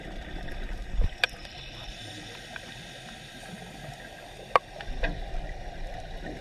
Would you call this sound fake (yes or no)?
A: no